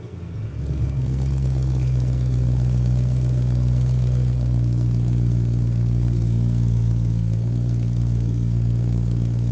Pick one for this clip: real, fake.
fake